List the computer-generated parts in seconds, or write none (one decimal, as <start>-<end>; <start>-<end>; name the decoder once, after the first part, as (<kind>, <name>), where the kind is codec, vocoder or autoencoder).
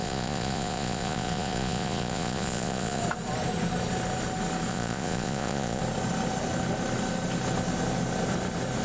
0.0-3.0 (vocoder, Vocos); 4.7-5.8